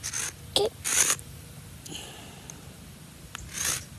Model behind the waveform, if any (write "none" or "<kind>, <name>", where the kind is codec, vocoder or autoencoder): none